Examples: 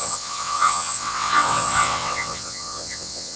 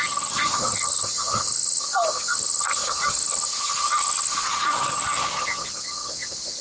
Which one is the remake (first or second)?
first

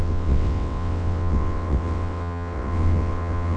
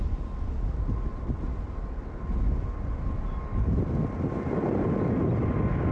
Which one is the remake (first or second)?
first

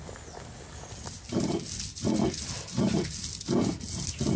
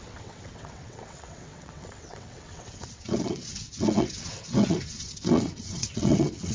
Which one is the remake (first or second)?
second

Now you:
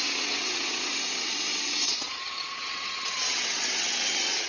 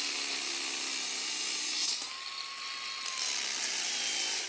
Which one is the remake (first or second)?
first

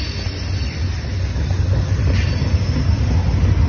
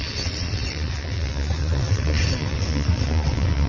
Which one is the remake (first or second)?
second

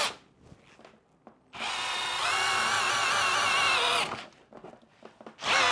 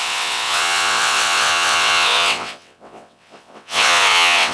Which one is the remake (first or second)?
second